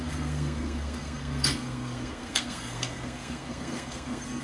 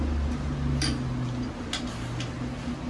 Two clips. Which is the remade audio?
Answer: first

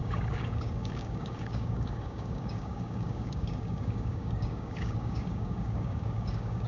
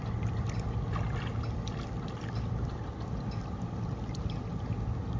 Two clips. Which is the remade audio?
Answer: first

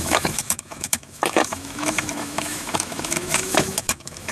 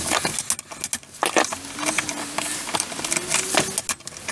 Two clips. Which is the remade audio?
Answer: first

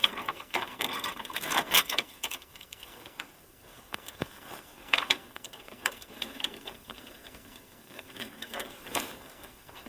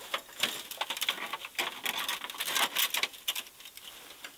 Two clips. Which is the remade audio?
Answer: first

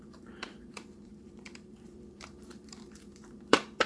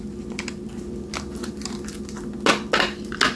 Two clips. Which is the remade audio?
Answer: first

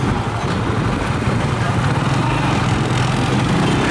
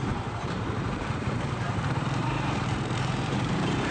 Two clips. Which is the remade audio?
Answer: second